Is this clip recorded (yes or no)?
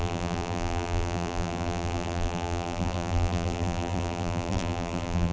no